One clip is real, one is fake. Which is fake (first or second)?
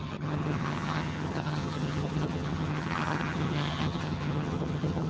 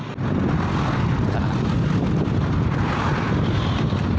first